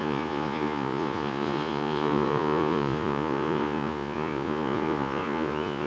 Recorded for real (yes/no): no